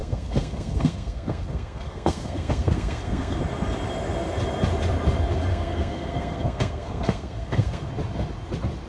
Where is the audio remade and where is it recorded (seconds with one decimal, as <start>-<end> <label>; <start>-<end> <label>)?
0.0-3.4 remade; 3.4-5.5 recorded; 5.5-7.9 remade; 7.9-8.9 recorded